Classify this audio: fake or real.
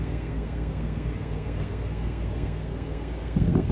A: fake